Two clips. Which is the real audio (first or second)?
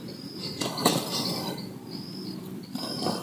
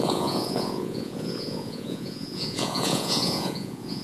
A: first